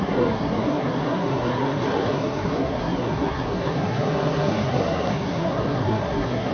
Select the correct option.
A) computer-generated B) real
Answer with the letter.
A